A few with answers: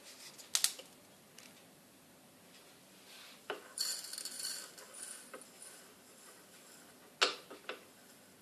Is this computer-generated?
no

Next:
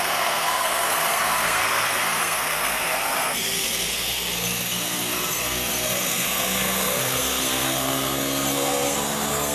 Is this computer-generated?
yes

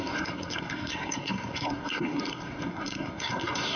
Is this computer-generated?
yes